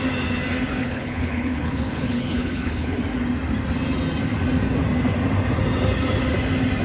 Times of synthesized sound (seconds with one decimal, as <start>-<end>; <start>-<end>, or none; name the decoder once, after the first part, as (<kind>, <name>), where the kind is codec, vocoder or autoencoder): 0.8-3.0 (codec, HILCodec)